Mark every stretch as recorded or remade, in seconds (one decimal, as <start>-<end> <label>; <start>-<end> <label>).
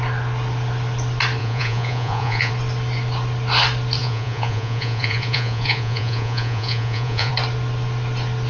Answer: 0.0-1.4 recorded; 1.4-2.5 remade; 2.5-4.0 recorded; 4.0-7.3 remade; 7.3-8.5 recorded